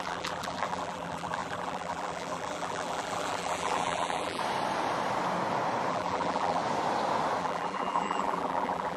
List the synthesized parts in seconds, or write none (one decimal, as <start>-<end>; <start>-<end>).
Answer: 0.0-4.4; 5.9-6.6; 7.4-9.0